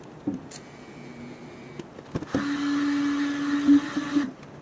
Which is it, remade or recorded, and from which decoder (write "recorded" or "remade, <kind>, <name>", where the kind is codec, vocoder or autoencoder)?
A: recorded